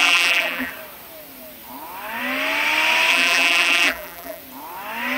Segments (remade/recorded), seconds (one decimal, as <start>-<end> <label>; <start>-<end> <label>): 0.0-0.7 remade; 0.7-3.1 recorded; 3.1-4.4 remade; 4.4-5.2 recorded